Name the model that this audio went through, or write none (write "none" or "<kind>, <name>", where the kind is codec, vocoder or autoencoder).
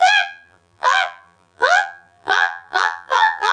vocoder, BigVGAN v2